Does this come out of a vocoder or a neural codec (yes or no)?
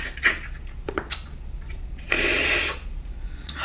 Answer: yes